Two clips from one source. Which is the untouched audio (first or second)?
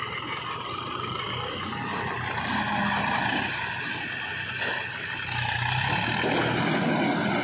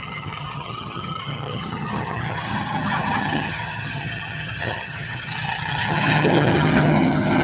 first